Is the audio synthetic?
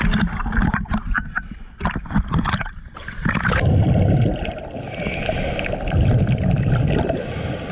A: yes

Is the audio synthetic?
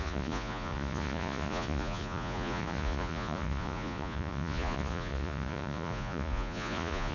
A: yes